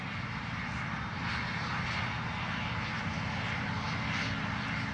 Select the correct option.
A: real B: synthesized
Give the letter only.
A